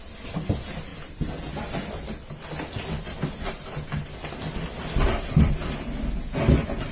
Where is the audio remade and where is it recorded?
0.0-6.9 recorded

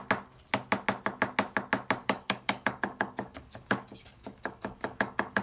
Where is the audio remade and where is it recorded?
0.0-2.0 recorded; 2.0-5.4 remade

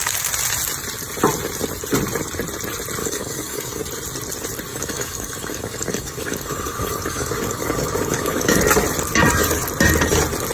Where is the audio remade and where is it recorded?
0.0-3.0 recorded; 3.0-3.8 remade; 3.8-4.7 recorded; 4.7-8.6 remade; 8.6-10.5 recorded